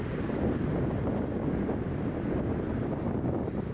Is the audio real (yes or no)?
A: yes